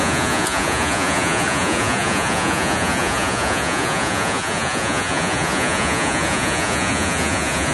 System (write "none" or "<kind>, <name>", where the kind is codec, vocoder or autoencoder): vocoder, Vocos